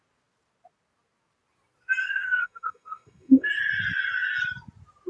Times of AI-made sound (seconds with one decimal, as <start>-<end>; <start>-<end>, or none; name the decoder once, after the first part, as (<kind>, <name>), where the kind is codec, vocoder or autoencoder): 2.0-3.5 (codec, SNAC)